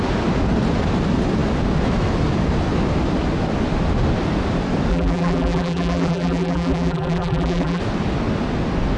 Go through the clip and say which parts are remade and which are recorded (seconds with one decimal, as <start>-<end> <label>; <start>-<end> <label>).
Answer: 0.0-4.9 recorded; 4.9-7.8 remade; 7.8-9.0 recorded